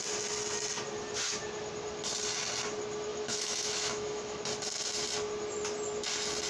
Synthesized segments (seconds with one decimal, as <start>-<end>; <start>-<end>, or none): 3.1-4.4